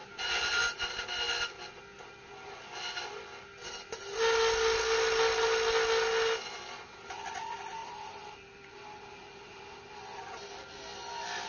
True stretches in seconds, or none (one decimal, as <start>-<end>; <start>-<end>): 0.5-7.8; 9.6-11.5